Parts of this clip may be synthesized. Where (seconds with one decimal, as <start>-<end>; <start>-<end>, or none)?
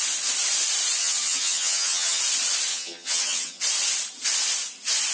1.0-2.2; 2.7-3.6